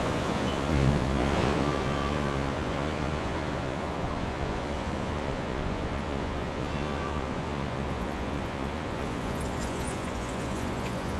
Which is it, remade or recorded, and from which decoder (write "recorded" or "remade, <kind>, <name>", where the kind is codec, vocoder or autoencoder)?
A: remade, vocoder, Vocos